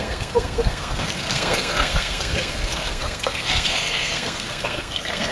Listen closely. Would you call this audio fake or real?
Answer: fake